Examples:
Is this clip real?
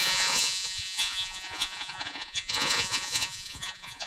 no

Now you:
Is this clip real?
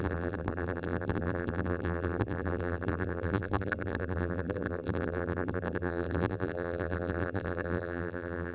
no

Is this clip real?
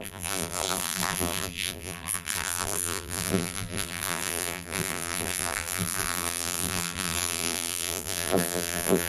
no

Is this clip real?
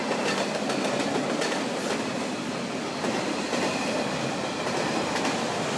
yes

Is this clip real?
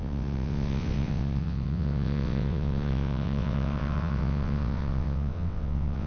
no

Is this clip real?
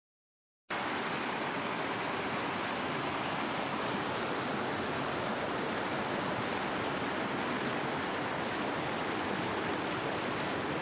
yes